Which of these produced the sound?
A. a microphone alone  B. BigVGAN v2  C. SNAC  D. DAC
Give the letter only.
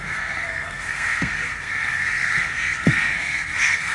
C